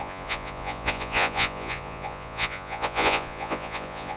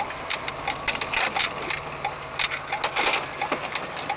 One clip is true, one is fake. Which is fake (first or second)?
first